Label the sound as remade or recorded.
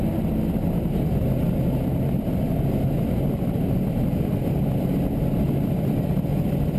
recorded